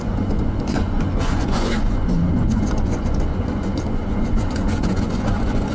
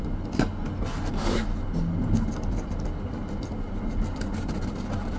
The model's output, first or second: first